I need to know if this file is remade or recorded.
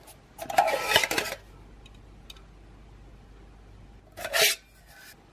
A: recorded